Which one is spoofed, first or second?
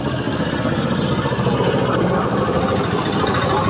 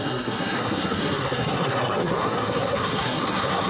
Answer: second